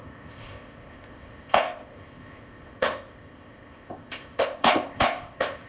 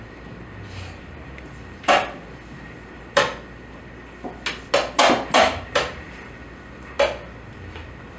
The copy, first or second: first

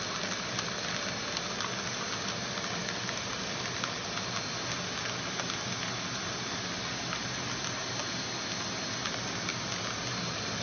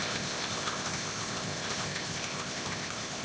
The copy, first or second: second